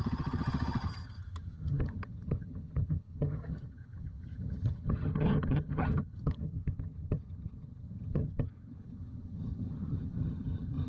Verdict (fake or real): fake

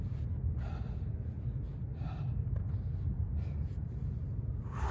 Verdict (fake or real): real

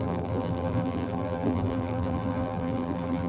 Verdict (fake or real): fake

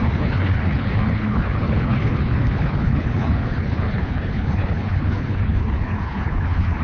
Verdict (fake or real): fake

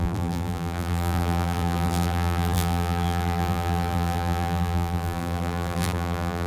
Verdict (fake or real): fake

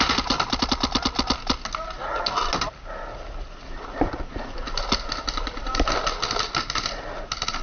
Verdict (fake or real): real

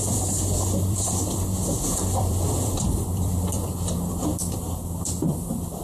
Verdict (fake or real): fake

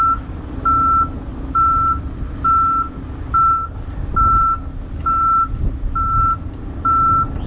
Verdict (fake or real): real